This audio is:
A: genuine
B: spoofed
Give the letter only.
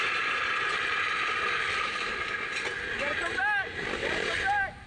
A